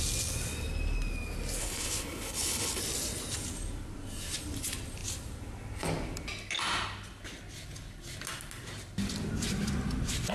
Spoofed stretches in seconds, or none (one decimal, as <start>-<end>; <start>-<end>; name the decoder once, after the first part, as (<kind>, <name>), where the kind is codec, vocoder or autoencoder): 1.6-2.8 (codec, HILCodec)